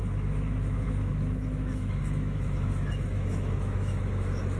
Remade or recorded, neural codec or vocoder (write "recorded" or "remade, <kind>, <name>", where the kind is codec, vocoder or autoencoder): remade, autoencoder, DAC-VAE